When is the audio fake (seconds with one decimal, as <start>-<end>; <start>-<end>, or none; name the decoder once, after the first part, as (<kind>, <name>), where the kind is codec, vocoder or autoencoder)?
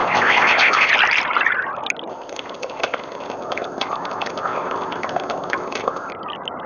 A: 0.0-0.9 (codec, ZipCodec); 2.1-6.1